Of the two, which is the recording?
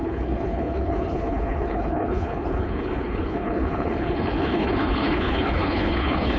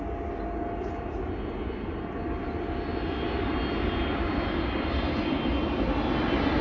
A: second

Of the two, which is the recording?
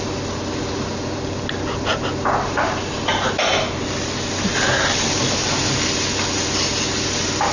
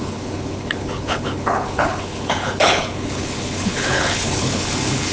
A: first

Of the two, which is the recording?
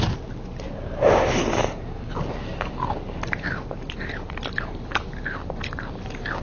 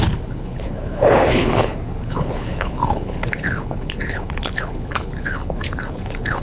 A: first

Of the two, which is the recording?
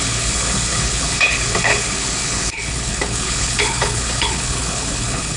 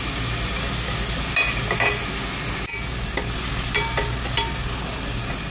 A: second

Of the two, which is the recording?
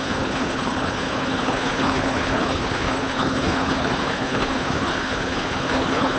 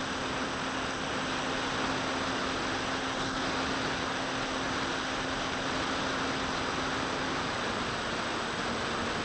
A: second